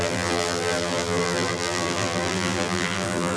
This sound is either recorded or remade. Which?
remade